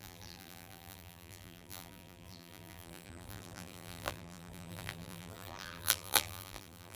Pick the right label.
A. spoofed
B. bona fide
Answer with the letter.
A